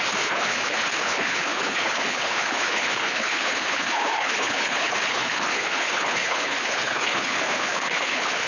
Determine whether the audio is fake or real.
fake